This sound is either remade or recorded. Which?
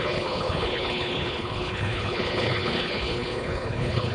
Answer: remade